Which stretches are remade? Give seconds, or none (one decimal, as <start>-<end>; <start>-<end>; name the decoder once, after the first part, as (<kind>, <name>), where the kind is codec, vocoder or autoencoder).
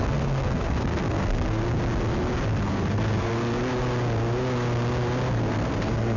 0.0-1.6 (codec, SNAC); 2.7-3.3; 5.5-6.2